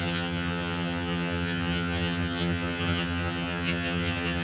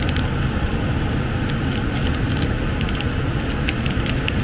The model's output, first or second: first